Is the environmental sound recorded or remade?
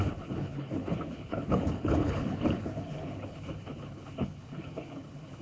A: remade